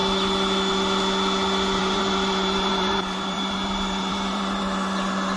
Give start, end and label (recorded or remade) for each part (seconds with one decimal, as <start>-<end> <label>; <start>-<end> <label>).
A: 0.0-1.8 recorded; 1.8-4.6 remade; 4.6-5.4 recorded